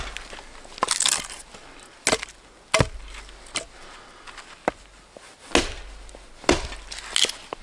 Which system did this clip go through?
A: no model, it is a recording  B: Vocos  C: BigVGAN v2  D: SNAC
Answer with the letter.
A